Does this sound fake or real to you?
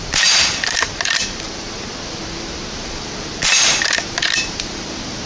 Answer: fake